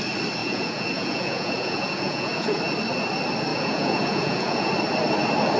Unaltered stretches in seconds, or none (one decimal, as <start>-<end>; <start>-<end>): 0.0-0.4; 2.6-3.5; 4.7-5.6